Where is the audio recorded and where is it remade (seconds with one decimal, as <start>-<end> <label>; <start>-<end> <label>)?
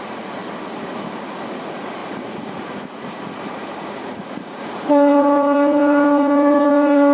0.0-0.4 remade; 0.4-1.5 recorded; 1.5-7.1 remade